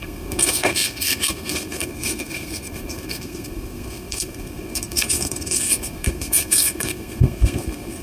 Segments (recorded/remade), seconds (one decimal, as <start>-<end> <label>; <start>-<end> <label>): 0.0-8.0 remade

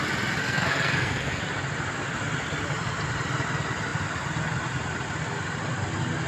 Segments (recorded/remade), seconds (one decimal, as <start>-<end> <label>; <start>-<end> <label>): 0.0-0.4 recorded; 0.4-1.4 remade; 1.4-6.3 recorded